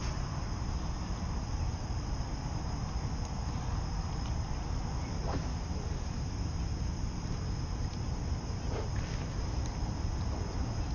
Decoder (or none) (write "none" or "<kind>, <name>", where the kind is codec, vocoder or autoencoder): none